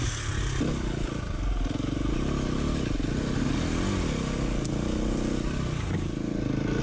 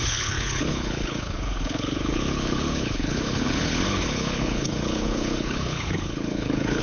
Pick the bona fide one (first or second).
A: first